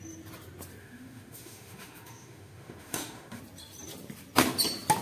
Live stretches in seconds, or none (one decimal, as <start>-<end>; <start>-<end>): 0.0-0.8; 3.4-5.0